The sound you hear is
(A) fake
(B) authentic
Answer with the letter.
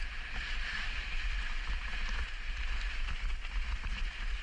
A